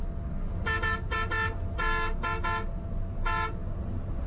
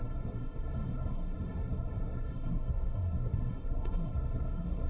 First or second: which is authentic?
first